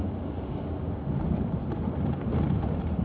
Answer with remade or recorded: recorded